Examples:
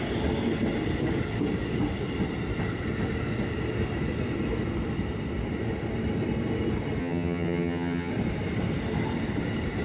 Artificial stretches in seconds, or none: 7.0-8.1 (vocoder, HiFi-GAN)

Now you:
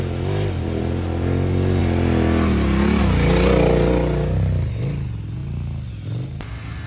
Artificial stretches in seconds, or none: none

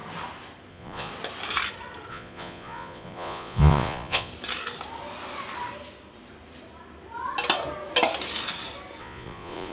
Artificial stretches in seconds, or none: 0.7-1.1 (vocoder, Vocos); 2.1-4.3; 9.0-9.7

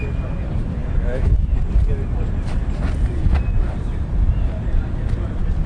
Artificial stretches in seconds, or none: none

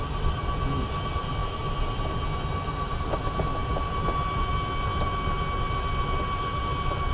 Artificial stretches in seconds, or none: none

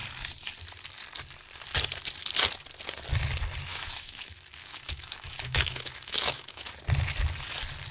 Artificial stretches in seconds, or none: 3.7-6.7 (autoencoder, DAC-VAE)